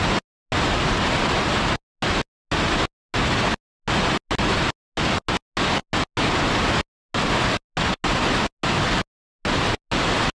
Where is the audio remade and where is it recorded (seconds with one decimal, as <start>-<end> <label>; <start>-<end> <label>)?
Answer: 0.0-10.3 recorded